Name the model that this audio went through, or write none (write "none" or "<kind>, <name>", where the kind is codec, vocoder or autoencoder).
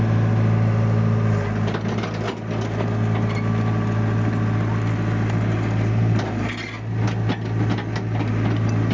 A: none